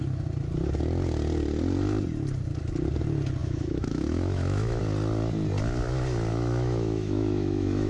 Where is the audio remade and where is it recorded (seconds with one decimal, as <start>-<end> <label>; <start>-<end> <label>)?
0.0-3.4 recorded; 3.4-4.8 remade; 4.8-6.3 recorded; 6.3-7.9 remade